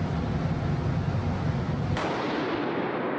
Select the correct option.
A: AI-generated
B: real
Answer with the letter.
B